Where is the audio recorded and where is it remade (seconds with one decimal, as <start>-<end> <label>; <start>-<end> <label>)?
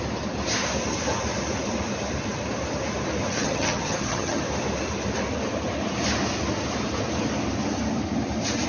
0.0-3.3 recorded; 3.3-4.4 remade; 4.4-8.7 recorded